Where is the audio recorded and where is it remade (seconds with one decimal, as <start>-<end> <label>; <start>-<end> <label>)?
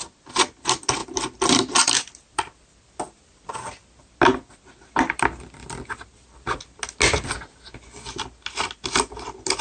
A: 0.0-9.6 recorded